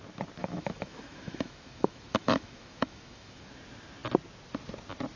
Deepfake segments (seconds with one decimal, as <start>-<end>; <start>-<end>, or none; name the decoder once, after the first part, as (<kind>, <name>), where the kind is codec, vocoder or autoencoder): 0.4-3.5 (autoencoder, DAC-VAE)